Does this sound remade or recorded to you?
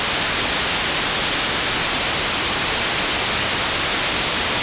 recorded